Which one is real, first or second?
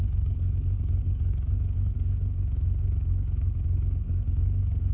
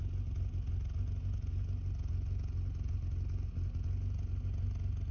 second